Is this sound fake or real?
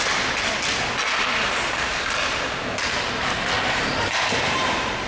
real